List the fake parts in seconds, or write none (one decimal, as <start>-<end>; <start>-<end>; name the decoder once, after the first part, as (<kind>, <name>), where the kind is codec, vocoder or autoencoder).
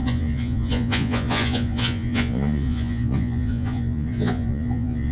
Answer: 0.0-5.1 (vocoder, Vocos)